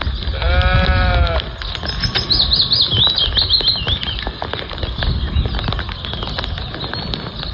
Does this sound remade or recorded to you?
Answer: recorded